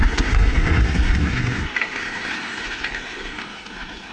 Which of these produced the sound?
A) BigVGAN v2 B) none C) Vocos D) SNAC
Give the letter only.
D